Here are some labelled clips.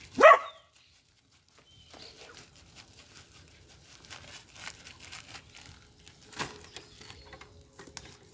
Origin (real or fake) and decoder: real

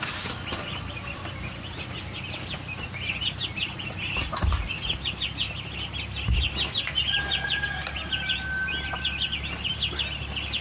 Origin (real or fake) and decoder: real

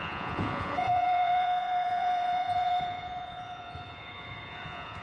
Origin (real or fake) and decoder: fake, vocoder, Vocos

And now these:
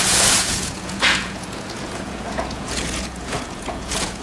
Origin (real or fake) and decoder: fake, vocoder, Vocos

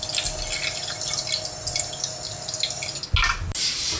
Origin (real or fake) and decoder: real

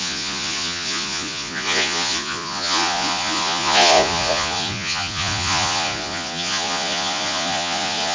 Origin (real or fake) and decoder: fake, vocoder, Vocos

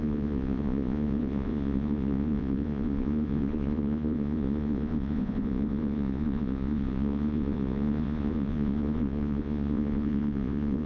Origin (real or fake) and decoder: fake, vocoder, Vocos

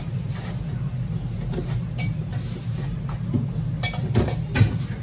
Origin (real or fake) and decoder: real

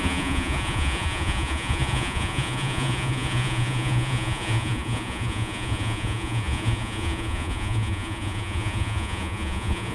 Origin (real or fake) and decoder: fake, vocoder, Vocos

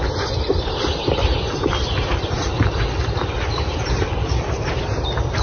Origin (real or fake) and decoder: real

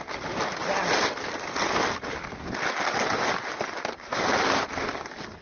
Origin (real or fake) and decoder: real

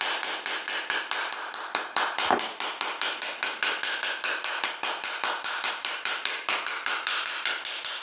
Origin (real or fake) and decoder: real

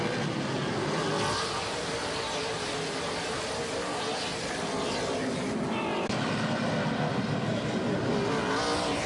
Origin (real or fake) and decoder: real